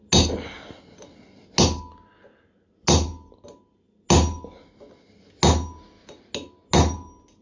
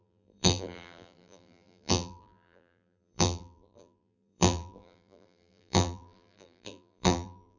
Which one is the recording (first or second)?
first